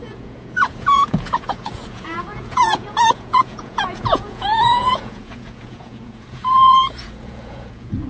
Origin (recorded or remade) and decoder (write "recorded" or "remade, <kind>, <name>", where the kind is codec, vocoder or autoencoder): remade, vocoder, Vocos